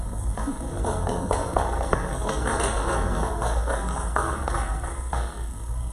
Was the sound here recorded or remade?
remade